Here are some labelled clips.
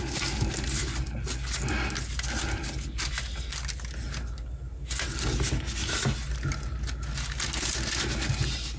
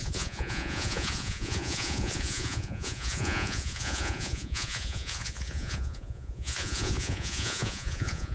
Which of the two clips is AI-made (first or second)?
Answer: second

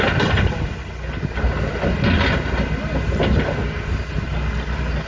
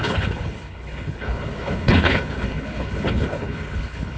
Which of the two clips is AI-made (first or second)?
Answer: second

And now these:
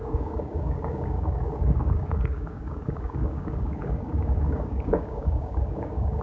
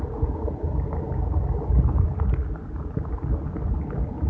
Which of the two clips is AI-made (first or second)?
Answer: first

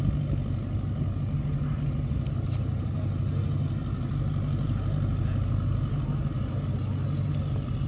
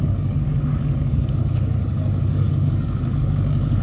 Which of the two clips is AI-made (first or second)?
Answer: second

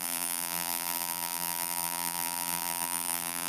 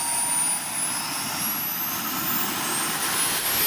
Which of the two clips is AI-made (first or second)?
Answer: first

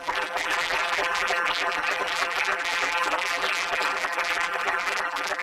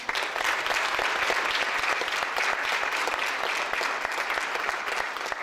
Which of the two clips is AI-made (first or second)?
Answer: first